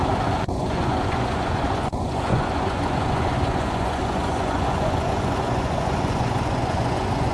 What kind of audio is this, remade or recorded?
remade